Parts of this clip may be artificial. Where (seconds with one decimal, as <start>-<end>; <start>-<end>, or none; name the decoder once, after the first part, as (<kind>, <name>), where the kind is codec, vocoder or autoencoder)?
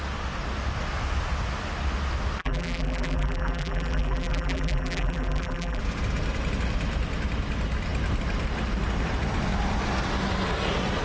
2.4-5.8 (vocoder, BigVGAN v2)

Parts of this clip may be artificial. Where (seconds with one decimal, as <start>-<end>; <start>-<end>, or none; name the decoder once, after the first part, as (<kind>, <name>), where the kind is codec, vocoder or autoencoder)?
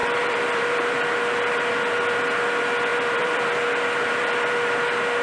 0.0-1.5 (vocoder, BigVGAN v2); 2.9-4.5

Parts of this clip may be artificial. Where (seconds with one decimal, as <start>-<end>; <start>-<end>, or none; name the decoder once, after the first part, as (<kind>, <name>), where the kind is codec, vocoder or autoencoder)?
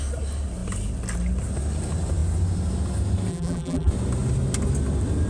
3.3-3.9 (vocoder, BigVGAN v2)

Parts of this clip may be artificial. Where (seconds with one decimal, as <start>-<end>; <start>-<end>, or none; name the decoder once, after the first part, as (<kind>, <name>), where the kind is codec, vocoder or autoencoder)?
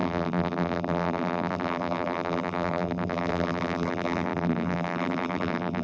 0.0-5.8 (vocoder, BigVGAN v2)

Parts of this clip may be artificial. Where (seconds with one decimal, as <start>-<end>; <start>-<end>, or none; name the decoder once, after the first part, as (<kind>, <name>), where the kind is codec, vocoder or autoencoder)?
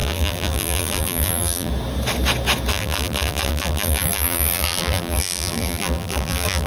0.0-1.7 (vocoder, BigVGAN v2); 2.7-6.7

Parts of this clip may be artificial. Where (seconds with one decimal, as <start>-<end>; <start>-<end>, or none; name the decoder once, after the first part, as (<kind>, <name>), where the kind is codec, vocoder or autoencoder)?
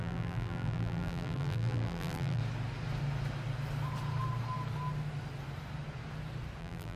0.0-2.4 (vocoder, BigVGAN v2); 6.6-7.0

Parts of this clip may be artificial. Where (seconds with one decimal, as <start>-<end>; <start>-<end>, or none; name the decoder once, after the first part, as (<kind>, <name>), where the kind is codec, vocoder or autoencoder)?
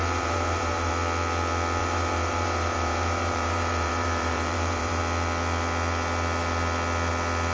0.0-0.9 (vocoder, BigVGAN v2); 1.8-5.0